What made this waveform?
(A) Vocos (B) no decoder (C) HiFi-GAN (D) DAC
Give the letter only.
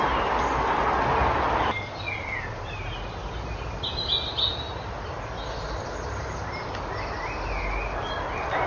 B